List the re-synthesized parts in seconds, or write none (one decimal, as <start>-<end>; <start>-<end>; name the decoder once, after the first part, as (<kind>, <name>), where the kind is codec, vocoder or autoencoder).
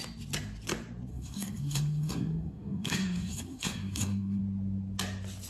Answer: 1.1-4.4 (codec, SNAC)